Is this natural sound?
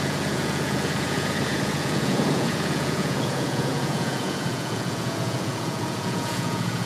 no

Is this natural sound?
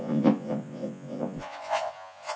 no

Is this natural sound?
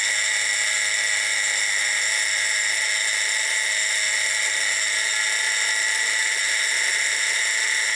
yes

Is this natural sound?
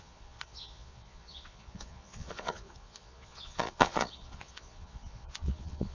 no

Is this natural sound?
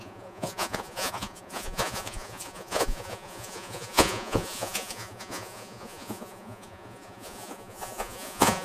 no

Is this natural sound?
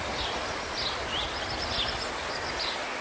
yes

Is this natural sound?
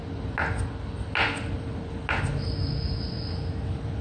yes